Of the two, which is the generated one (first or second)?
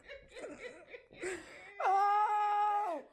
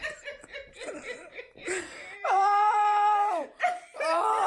second